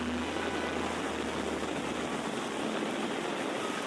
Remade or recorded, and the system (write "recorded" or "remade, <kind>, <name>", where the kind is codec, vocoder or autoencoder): recorded